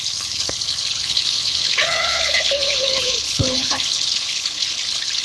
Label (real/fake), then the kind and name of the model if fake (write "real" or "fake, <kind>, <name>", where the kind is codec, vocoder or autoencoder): fake, codec, HILCodec